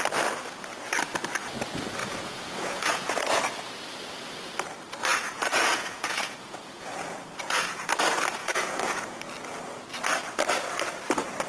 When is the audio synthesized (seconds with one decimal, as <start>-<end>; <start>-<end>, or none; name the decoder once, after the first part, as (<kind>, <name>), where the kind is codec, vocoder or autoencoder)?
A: 2.0-3.4 (vocoder, Vocos); 5.1-7.9; 8.4-9.2